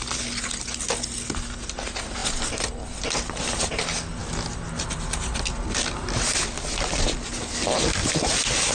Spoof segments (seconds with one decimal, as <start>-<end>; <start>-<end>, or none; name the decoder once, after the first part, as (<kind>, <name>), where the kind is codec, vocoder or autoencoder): none